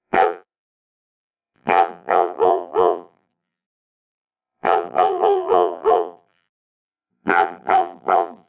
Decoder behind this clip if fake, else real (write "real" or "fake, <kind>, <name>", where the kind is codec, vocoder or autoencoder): fake, vocoder, BigVGAN v2